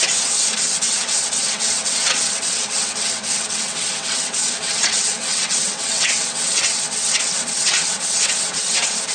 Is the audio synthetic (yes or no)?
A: yes